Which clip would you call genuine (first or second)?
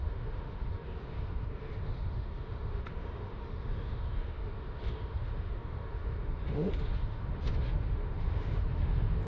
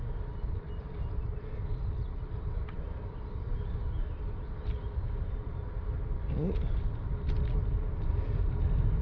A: second